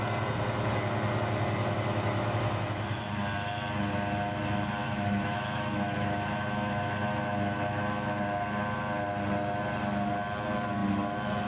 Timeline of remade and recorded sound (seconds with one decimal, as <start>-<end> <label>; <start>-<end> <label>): 0.0-4.8 recorded; 4.8-8.2 remade; 8.2-11.5 recorded